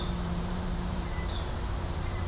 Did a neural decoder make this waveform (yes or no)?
yes